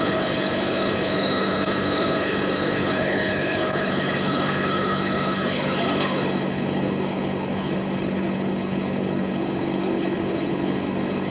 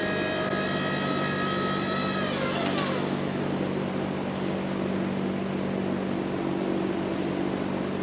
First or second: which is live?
second